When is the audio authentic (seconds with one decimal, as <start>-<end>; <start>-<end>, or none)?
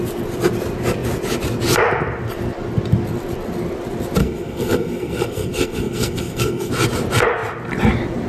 0.0-4.2; 6.7-8.3